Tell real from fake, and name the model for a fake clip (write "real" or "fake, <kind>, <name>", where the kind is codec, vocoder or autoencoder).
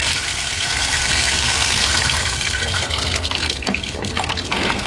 fake, codec, SNAC